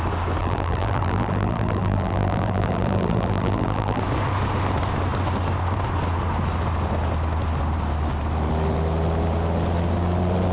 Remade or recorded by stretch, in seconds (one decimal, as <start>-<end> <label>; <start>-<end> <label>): 0.0-0.4 recorded; 0.4-4.0 remade; 4.0-10.5 recorded